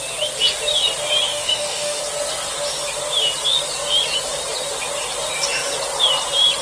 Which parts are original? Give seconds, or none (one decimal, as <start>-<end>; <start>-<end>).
0.0-1.3; 2.0-6.6